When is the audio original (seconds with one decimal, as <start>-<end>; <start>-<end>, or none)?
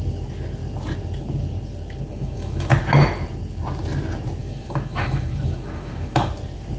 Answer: 0.0-2.1; 2.7-4.4; 6.3-6.8